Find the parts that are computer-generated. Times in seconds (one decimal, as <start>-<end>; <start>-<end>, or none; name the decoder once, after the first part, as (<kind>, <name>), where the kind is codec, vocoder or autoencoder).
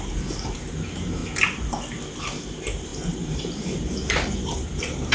0.0-1.2 (vocoder, BigVGAN v2); 2.2-5.1